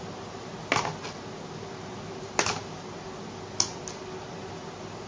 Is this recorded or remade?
recorded